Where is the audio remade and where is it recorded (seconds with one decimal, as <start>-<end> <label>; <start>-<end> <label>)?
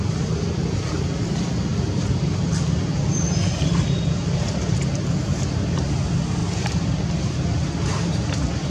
0.0-1.7 recorded; 1.7-5.3 remade; 5.3-6.4 recorded; 6.4-7.7 remade; 7.7-8.7 recorded